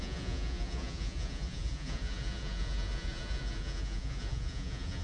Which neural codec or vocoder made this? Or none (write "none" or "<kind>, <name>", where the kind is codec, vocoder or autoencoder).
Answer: vocoder, Vocos